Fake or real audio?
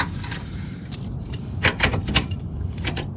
fake